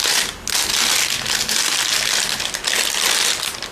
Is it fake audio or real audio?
real